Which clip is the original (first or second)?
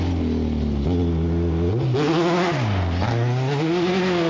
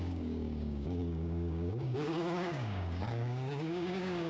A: first